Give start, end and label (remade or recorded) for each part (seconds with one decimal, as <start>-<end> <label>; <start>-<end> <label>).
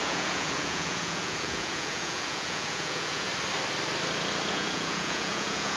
0.0-3.3 remade; 3.3-4.5 recorded; 4.5-5.8 remade